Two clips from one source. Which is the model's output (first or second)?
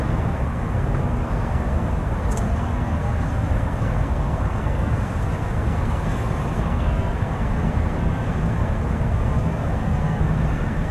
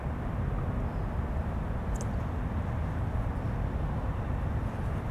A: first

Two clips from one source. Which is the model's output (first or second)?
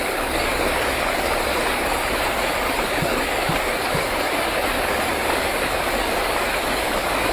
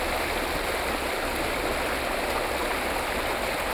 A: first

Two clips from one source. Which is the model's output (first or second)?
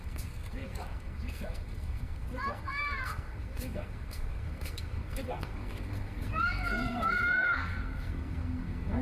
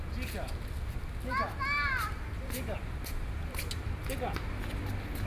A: first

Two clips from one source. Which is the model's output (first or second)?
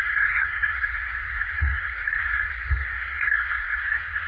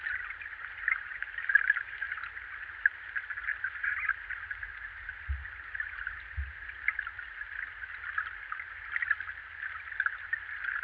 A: first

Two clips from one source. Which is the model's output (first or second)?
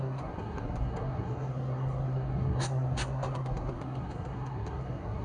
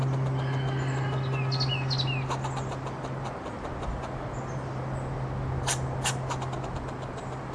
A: first